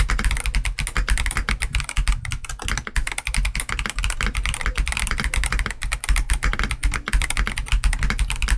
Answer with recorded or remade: recorded